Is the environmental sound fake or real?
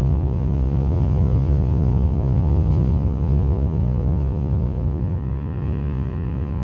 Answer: fake